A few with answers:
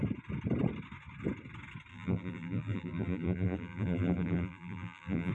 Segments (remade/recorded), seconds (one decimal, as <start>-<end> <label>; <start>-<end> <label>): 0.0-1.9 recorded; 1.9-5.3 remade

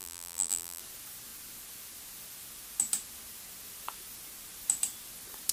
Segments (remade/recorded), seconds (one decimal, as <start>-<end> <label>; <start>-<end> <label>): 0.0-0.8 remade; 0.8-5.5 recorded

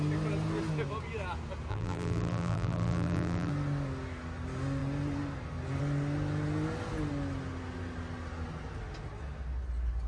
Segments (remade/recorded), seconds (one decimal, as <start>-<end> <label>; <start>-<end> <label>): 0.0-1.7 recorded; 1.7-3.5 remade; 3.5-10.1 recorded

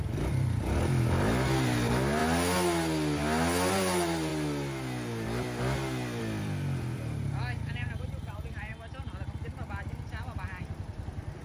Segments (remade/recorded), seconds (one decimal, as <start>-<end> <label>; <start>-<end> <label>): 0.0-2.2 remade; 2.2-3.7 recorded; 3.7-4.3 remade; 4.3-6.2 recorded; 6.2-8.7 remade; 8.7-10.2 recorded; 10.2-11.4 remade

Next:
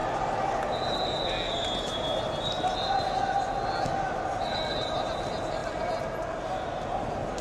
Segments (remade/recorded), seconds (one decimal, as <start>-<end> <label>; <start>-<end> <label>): 0.0-7.4 recorded